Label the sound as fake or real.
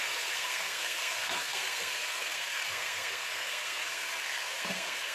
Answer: fake